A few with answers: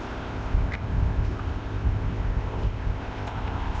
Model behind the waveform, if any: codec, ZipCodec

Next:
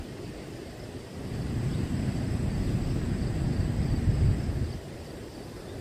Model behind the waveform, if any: none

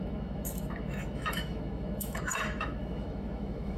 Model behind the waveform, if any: autoencoder, DAC-VAE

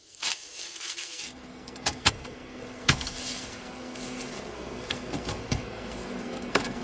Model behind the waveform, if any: codec, SNAC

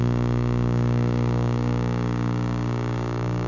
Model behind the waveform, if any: codec, DAC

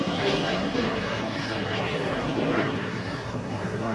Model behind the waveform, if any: codec, SNAC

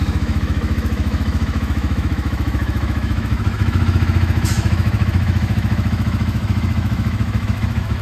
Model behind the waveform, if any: autoencoder, DAC-VAE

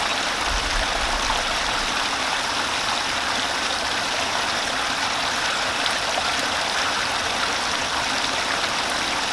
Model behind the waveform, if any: none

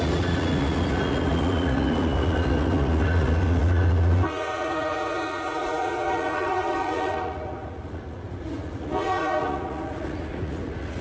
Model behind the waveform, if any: vocoder, Vocos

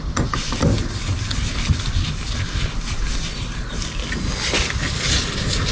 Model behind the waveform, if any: none